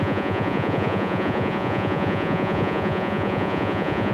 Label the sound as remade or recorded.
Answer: remade